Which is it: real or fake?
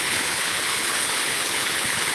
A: fake